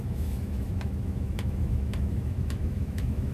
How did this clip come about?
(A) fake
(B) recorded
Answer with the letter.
A